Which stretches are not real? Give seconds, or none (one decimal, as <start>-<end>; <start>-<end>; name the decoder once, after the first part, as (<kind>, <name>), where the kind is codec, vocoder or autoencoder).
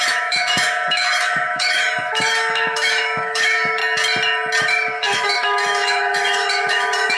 0.0-3.8 (autoencoder, DAC-VAE); 4.6-7.2